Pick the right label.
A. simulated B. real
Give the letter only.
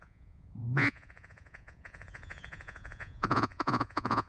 A